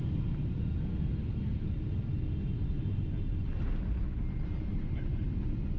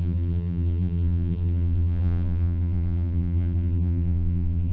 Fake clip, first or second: second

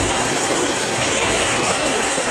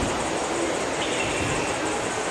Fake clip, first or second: first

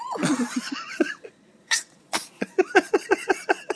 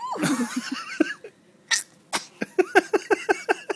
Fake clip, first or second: first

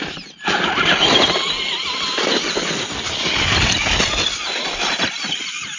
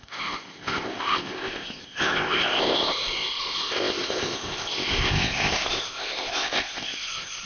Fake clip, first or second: second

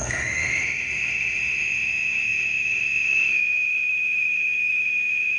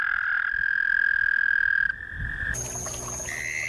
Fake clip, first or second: first